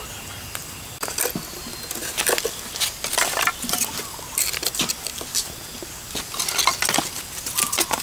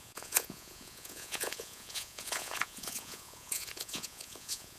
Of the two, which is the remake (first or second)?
second